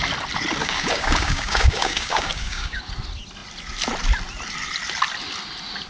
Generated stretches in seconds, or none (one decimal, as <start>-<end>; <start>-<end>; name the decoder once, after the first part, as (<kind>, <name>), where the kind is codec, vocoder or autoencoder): 0.6-2.8 (codec, DAC)